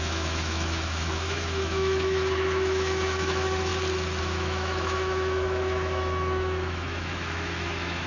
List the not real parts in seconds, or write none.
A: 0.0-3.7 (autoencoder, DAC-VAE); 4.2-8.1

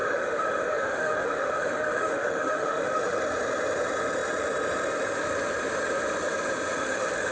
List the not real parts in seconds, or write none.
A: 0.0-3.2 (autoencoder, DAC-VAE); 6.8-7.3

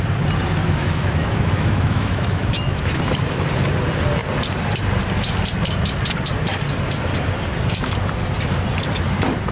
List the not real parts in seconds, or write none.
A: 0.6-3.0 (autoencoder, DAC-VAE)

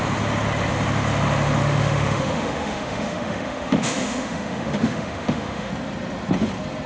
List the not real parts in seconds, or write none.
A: 1.6-5.7 (autoencoder, DAC-VAE)

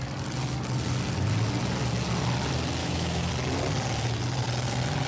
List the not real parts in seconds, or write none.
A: 2.8-3.3 (autoencoder, DAC-VAE)

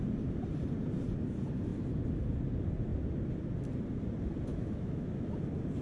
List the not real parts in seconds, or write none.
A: 4.5-5.3 (autoencoder, DAC-VAE)